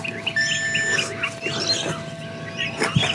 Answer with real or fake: real